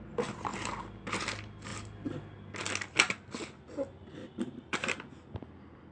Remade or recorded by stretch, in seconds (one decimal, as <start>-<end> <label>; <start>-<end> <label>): 0.0-4.2 recorded; 4.2-5.1 remade; 5.1-5.9 recorded